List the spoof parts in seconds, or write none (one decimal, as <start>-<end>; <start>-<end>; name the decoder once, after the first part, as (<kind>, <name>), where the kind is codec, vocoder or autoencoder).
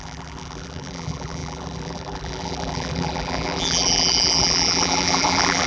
0.0-5.7 (vocoder, BigVGAN v2)